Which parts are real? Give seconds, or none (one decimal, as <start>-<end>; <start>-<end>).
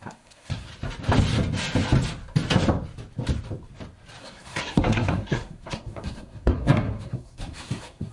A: 0.7-4.2